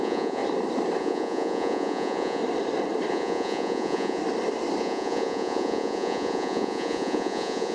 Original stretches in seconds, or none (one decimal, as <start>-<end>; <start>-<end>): 0.4-1.0; 2.4-3.1; 4.2-4.8